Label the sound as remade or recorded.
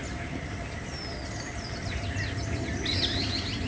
recorded